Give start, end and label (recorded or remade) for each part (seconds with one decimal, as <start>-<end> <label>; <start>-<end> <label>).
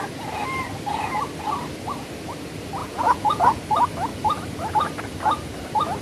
0.0-2.8 recorded; 2.8-3.6 remade; 3.6-6.0 recorded